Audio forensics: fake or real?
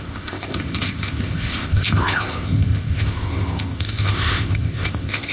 fake